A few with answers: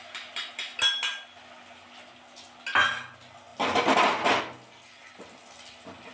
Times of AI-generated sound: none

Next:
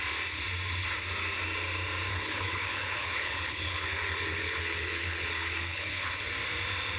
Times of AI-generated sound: 2.1-6.3 (codec, HILCodec)

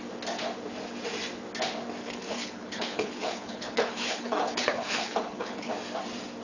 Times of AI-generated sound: 2.0-5.7 (codec, HILCodec)

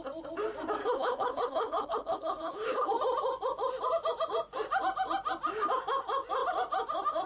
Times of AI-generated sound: 0.8-2.9 (codec, HILCodec)

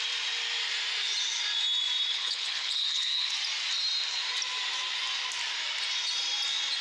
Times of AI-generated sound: 2.1-3.3 (codec, HILCodec)

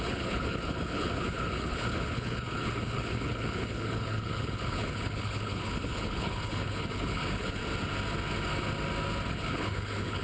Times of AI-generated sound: 0.0-7.6 (codec, HILCodec); 9.3-10.2

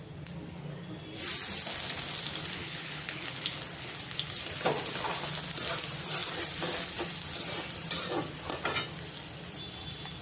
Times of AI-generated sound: 2.6-3.4 (codec, HILCodec)

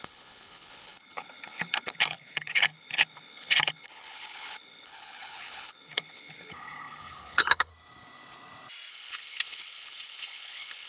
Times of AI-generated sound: 0.0-7.7 (codec, HILCodec); 8.9-10.9